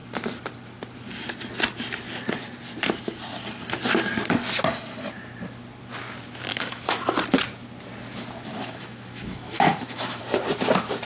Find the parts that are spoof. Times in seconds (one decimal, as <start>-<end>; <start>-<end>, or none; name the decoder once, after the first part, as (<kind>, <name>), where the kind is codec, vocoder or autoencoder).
6.5-7.0 (autoencoder, DAC-VAE); 8.5-10.2